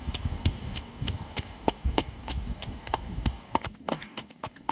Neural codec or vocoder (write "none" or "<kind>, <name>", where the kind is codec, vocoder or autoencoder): codec, DAC